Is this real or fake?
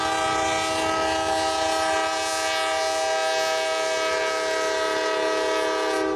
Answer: real